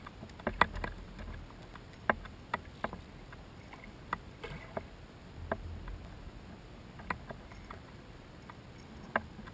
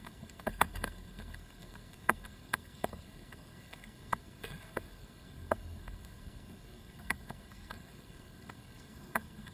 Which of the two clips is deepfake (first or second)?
second